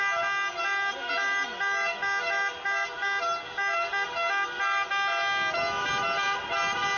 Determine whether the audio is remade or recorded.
recorded